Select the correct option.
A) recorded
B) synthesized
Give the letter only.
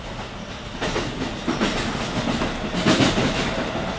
A